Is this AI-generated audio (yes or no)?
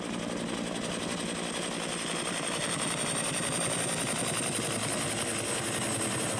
no